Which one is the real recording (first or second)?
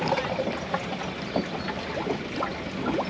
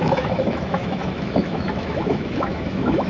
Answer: first